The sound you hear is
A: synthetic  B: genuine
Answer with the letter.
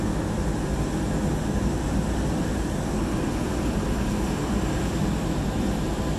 B